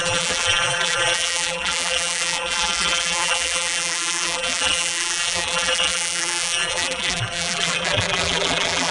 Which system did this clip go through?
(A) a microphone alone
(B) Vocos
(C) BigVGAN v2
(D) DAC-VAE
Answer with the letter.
C